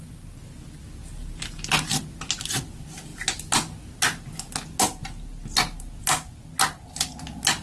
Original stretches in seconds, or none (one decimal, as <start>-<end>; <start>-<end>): 0.0-7.6